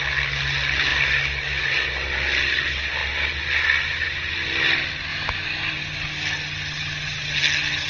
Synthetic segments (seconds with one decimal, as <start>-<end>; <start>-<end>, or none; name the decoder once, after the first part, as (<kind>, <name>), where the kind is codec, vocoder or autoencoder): none